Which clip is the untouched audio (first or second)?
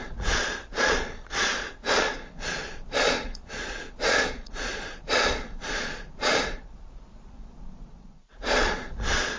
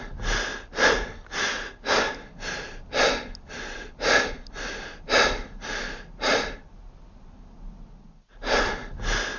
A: second